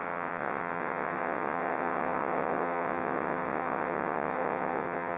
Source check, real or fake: fake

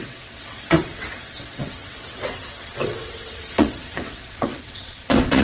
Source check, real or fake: fake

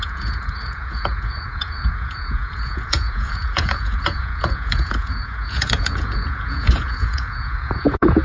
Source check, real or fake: fake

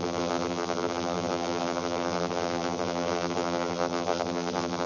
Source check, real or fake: fake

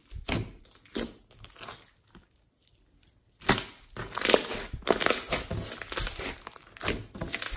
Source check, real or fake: real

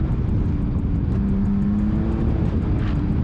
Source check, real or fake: real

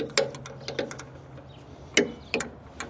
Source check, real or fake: real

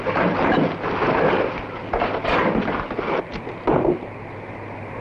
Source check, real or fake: real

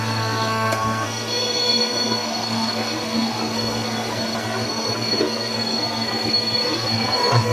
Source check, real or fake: fake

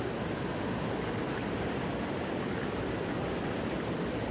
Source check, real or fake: real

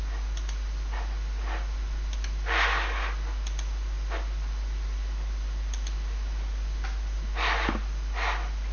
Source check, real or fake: real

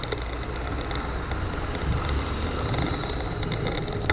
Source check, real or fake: real